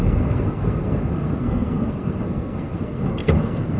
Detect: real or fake fake